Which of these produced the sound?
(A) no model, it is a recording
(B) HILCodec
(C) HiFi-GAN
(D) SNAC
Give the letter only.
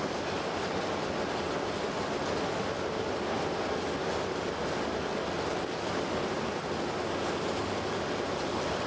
A